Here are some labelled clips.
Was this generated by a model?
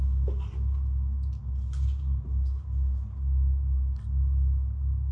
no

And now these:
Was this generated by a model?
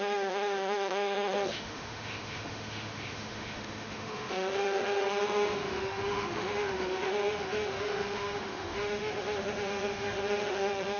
yes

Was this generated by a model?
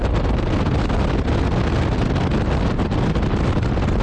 no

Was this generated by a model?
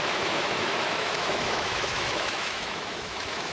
yes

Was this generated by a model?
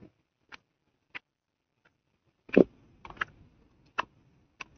no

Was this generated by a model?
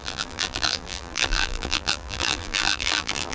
yes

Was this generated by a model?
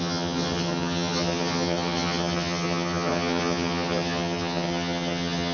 yes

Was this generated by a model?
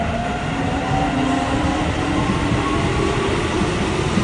no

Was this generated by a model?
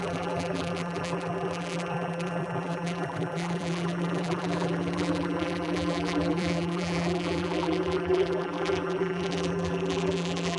yes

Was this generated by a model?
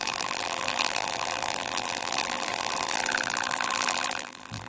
yes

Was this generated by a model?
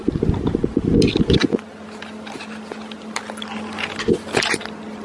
no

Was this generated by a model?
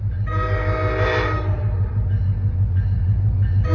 yes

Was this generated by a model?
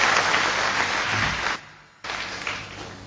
no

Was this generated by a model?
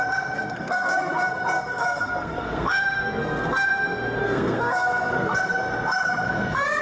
yes